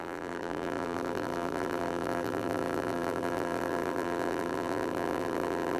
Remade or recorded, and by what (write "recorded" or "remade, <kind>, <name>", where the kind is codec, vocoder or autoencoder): remade, vocoder, BigVGAN v2